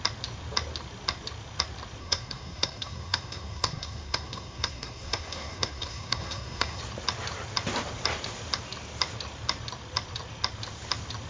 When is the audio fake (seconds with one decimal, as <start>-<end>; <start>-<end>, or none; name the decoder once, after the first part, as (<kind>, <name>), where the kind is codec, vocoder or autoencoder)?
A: 2.0-6.8 (codec, SNAC)